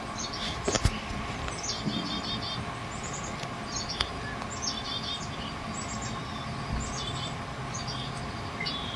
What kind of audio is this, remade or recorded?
recorded